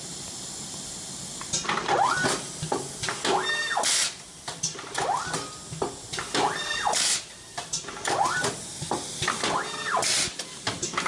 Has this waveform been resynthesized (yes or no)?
no